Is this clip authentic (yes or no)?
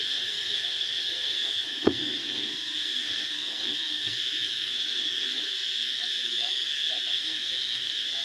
no